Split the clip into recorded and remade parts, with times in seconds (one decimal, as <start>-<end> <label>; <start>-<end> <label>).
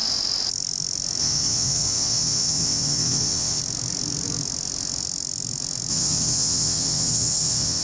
0.0-1.2 recorded; 1.2-3.6 remade; 3.6-5.9 recorded; 5.9-7.8 remade